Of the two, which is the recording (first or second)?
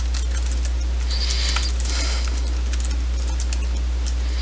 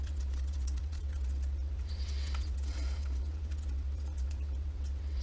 first